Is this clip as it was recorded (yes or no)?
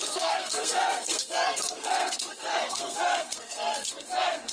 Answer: no